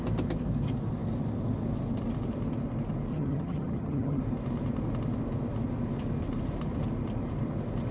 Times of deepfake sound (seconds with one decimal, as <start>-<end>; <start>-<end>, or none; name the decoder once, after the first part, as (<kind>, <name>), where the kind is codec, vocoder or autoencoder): 3.1-4.2 (vocoder, HiFi-GAN)